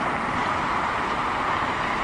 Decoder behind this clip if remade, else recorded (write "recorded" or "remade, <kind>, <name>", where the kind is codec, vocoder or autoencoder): recorded